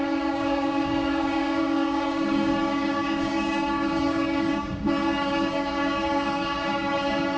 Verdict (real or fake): fake